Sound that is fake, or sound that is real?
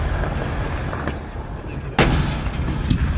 real